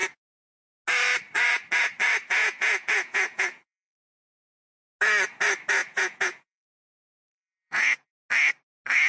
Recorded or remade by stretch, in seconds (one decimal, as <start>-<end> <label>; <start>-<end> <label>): 0.0-2.4 recorded; 2.4-4.1 remade; 4.1-5.8 recorded; 5.8-8.1 remade; 8.1-9.1 recorded